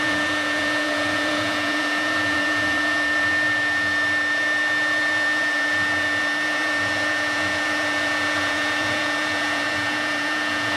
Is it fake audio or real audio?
fake